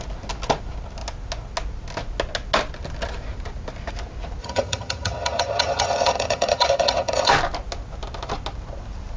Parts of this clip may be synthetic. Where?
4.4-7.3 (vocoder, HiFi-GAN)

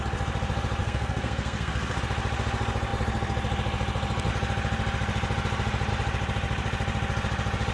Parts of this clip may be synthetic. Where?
0.8-2.0 (codec, SNAC)

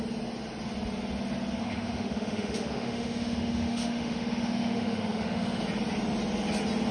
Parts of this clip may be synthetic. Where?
1.6-5.6 (autoencoder, DAC-VAE)

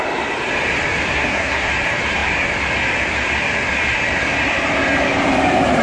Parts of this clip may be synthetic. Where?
1.1-1.7 (codec, SNAC)

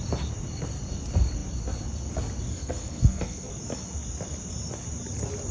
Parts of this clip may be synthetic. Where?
2.5-3.5 (codec, SNAC)